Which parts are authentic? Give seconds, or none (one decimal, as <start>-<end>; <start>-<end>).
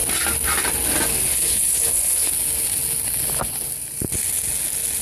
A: 0.0-1.3; 2.3-5.0